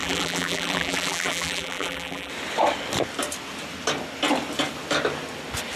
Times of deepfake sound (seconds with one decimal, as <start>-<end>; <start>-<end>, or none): 0.0-2.3